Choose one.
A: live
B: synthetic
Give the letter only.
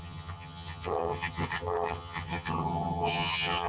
B